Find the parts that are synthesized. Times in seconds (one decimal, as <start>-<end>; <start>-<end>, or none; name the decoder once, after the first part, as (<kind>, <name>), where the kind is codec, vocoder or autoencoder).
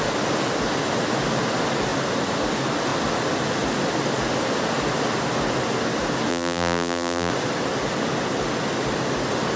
6.3-7.3 (vocoder, BigVGAN v2)